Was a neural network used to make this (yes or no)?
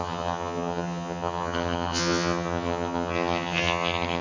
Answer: yes